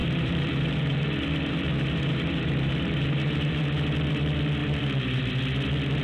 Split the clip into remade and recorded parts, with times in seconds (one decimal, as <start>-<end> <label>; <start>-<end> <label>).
0.0-3.6 remade; 3.6-4.6 recorded; 4.6-5.3 remade; 5.3-6.0 recorded